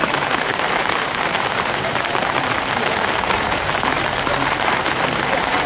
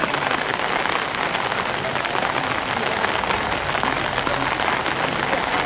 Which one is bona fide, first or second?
second